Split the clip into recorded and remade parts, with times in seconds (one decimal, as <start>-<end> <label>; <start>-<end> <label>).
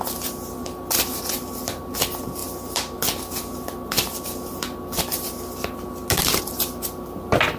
0.0-7.6 recorded